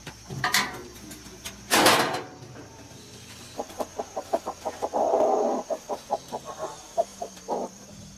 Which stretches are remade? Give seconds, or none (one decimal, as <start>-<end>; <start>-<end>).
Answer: 0.0-8.2